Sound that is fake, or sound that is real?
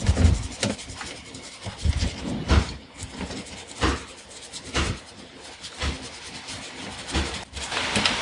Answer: fake